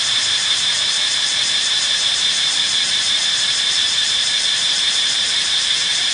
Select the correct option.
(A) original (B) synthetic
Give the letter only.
B